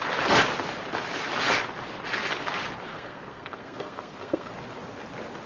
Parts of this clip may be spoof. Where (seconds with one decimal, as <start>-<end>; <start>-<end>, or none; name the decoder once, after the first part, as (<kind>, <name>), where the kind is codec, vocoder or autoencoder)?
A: 2.9-4.5 (codec, SNAC)